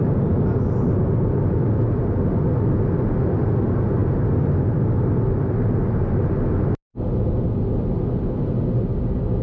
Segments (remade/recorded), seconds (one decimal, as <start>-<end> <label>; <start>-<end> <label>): 0.0-9.4 recorded